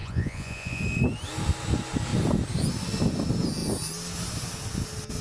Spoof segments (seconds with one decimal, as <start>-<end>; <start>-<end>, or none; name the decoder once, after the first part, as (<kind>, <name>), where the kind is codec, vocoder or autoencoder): 0.0-0.8 (vocoder, Vocos)